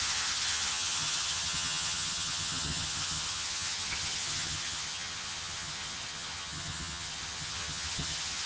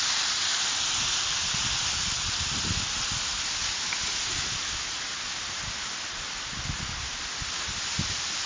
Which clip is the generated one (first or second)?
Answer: first